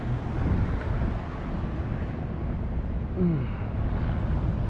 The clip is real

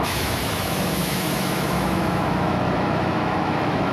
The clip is fake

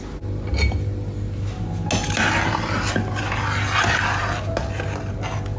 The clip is real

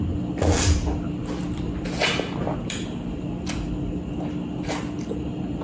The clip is real